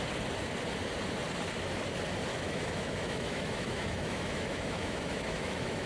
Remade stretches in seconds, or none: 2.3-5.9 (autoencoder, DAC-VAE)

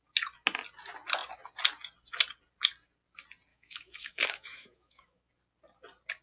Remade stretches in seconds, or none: 3.5-5.3 (autoencoder, DAC-VAE)